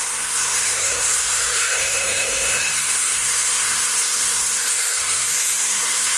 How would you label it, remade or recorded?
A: remade